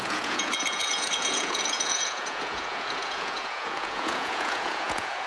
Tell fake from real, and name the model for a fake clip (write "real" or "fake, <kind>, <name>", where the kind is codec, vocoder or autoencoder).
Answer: fake, vocoder, Vocos